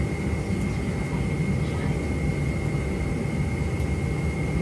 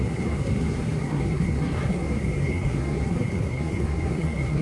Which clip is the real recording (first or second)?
first